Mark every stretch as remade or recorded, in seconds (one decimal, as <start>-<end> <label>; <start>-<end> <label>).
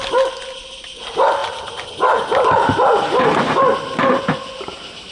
0.0-5.1 recorded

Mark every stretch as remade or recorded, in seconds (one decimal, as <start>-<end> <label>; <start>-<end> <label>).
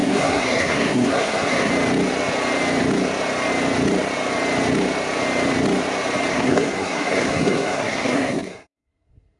0.0-1.7 remade; 1.7-6.3 recorded; 6.3-9.4 remade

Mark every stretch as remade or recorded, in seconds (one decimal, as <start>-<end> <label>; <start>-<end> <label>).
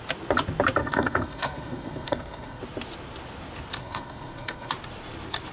0.0-0.8 recorded; 0.8-2.6 remade; 2.6-3.8 recorded; 3.8-4.7 remade; 4.7-5.5 recorded